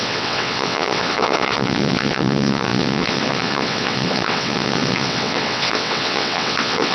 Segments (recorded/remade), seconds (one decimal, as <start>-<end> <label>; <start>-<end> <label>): 0.0-6.9 remade